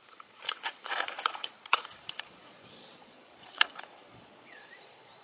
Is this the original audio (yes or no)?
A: no